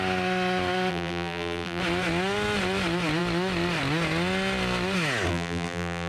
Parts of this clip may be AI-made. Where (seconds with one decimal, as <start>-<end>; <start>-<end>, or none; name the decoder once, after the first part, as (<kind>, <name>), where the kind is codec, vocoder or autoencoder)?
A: 0.9-1.8 (vocoder, BigVGAN v2); 5.3-6.1